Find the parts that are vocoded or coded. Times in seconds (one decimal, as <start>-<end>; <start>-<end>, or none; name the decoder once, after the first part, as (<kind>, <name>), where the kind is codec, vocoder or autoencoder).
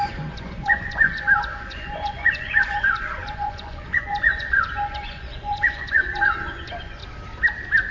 0.0-7.0 (vocoder, Vocos)